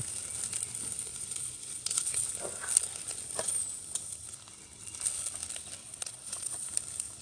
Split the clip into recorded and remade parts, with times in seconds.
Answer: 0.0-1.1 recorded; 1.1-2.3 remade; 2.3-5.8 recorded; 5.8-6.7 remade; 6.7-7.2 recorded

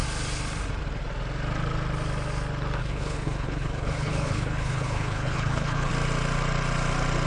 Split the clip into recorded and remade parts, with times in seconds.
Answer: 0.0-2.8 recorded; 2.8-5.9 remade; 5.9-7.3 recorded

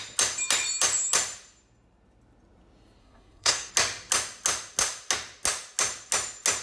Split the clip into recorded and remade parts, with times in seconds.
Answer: 0.0-3.0 recorded; 3.0-3.7 remade; 3.7-6.6 recorded

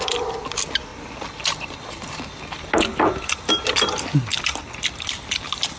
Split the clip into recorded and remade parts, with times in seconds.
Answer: 0.0-5.8 recorded

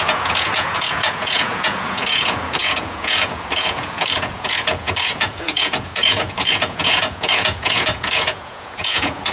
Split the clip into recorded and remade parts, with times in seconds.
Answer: 0.0-9.3 remade

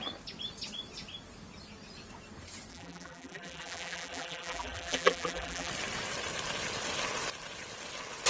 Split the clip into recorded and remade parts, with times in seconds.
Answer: 0.0-2.7 recorded; 2.7-5.7 remade; 5.7-8.3 recorded